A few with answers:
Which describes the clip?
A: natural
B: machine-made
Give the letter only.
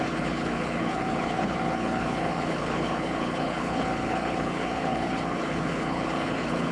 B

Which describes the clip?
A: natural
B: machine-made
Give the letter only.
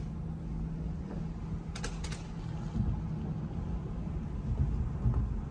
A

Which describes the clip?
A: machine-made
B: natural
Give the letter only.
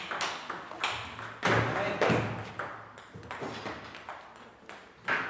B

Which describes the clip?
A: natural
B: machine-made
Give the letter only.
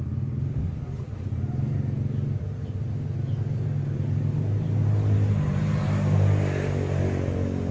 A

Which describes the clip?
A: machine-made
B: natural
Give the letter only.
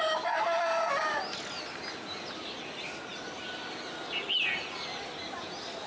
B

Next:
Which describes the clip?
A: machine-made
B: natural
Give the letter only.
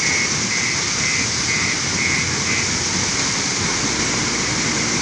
B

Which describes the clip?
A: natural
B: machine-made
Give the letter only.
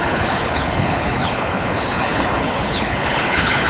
B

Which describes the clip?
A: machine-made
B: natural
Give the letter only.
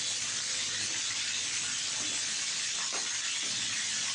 B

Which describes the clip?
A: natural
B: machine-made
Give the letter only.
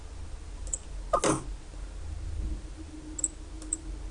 A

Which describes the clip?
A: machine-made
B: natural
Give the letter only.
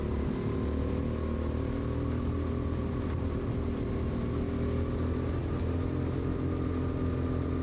B